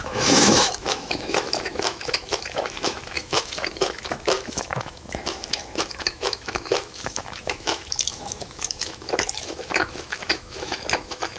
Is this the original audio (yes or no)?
no